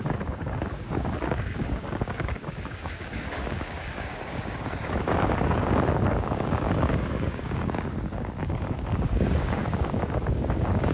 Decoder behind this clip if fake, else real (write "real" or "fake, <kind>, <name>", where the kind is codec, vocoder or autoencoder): fake, codec, DAC